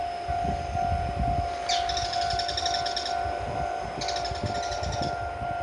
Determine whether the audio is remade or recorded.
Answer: recorded